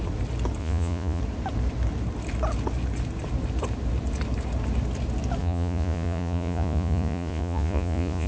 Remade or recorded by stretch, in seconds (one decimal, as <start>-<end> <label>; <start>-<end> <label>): 0.0-0.6 recorded; 0.6-1.2 remade; 1.2-5.4 recorded; 5.4-8.3 remade